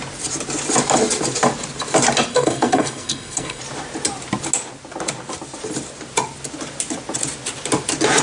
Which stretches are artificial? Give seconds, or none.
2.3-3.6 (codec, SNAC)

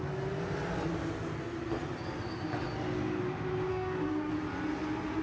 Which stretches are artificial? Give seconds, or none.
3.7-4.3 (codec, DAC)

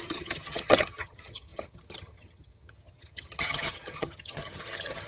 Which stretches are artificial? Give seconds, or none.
0.0-5.1 (vocoder, HiFi-GAN)

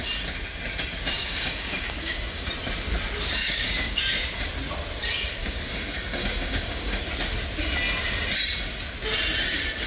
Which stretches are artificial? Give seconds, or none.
1.2-2.5 (codec, DAC); 3.4-4.4; 5.4-7.0

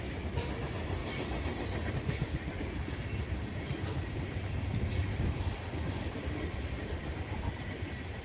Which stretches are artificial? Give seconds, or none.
0.0-1.0 (vocoder, BigVGAN v2); 1.9-8.2

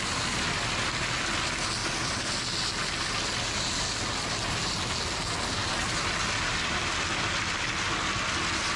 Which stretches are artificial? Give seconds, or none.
none